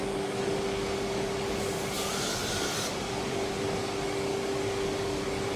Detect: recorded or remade remade